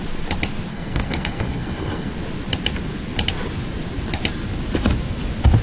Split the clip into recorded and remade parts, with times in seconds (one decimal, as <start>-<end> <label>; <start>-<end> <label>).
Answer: 0.0-0.7 recorded; 0.7-2.1 remade; 2.1-5.6 recorded